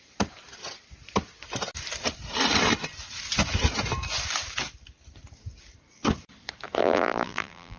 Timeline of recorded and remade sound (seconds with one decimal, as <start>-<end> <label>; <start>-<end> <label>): 0.0-6.8 recorded; 6.8-7.8 remade